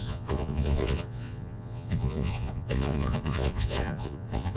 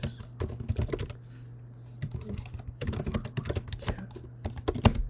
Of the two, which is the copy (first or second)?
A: first